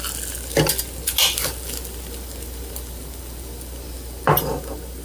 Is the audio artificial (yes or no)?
no